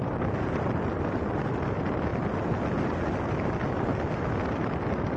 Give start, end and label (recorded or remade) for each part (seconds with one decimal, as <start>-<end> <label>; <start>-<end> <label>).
0.0-5.2 recorded